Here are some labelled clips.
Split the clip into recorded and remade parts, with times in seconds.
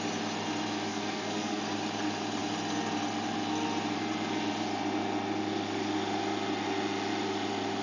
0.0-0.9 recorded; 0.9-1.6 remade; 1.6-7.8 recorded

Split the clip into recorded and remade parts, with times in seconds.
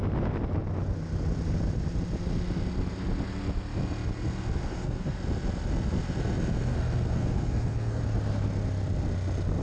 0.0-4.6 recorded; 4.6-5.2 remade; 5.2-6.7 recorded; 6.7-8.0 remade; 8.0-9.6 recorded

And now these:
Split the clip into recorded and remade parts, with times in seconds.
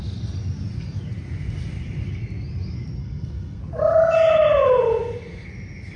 0.0-3.0 recorded; 3.0-3.6 remade; 3.6-6.0 recorded